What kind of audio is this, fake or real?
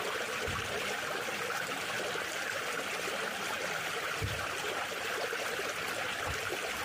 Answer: fake